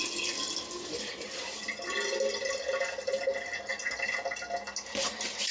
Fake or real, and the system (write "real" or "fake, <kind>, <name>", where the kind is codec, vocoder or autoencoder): real